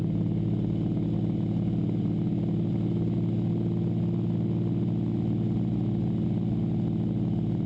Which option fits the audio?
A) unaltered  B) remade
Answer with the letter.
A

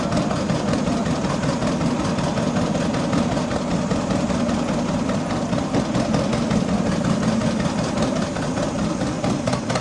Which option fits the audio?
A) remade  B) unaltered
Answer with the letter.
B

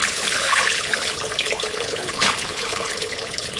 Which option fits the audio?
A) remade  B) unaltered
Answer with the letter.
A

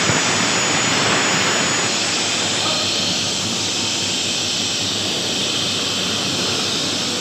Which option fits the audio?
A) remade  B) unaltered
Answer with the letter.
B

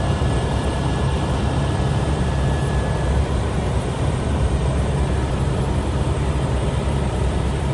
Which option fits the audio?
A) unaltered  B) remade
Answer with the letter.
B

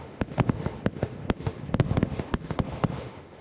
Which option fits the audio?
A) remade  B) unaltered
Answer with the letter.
A